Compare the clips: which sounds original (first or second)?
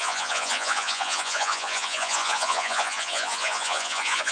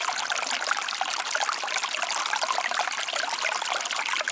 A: second